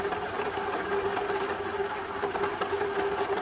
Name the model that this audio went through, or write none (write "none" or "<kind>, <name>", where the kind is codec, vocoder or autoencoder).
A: none